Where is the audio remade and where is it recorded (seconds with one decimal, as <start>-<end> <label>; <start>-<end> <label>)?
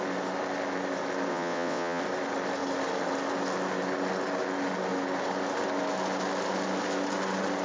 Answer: 0.0-1.3 recorded; 1.3-2.0 remade; 2.0-7.6 recorded